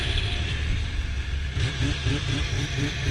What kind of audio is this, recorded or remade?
remade